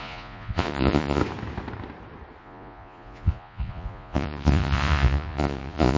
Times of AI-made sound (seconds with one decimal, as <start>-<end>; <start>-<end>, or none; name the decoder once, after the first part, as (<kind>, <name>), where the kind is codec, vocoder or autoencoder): 0.0-1.2 (vocoder, Vocos); 2.4-6.0